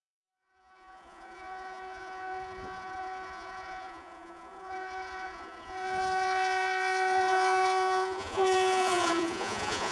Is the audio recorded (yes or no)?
no